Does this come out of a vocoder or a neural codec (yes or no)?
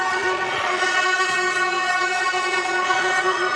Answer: yes